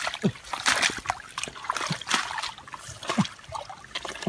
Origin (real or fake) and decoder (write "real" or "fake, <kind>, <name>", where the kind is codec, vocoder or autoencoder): real